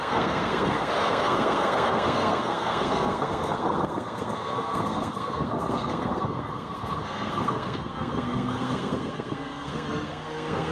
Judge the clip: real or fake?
fake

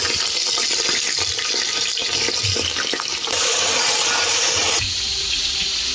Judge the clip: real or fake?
real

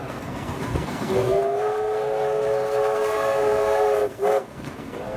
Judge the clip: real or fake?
fake